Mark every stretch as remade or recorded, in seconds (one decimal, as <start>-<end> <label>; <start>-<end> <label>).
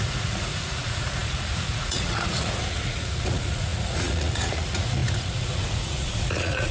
0.0-6.7 remade